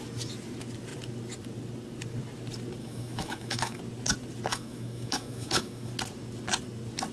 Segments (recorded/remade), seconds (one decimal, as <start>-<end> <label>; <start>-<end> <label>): 0.0-2.8 recorded; 2.8-3.8 remade; 3.8-4.5 recorded; 4.5-5.9 remade; 5.9-7.1 recorded

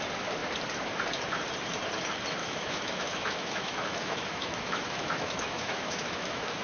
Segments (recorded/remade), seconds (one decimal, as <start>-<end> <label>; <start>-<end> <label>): 0.0-2.4 recorded; 2.4-6.6 remade

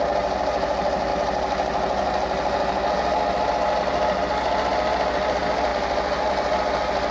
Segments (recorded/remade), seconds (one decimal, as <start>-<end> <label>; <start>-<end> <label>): 0.0-7.1 recorded

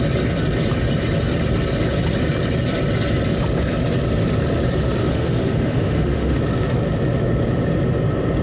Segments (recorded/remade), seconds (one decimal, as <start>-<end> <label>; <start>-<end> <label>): 0.0-5.0 recorded; 5.0-6.4 remade; 6.4-8.4 recorded

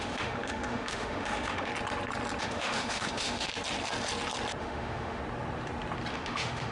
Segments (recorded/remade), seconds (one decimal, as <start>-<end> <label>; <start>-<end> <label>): 0.0-1.7 remade; 1.7-2.4 recorded; 2.4-3.5 remade; 3.5-4.6 recorded; 4.6-5.2 remade; 5.2-6.1 recorded; 6.1-6.7 remade

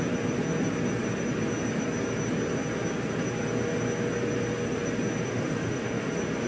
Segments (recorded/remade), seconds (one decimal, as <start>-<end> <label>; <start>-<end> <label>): 0.0-5.3 recorded; 5.3-6.1 remade; 6.1-6.5 recorded